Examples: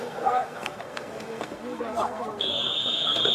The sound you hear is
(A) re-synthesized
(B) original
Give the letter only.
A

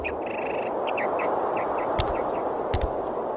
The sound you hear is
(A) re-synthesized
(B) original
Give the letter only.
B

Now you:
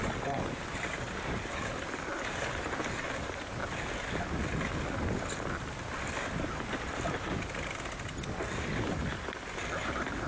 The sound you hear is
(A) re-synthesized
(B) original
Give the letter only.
B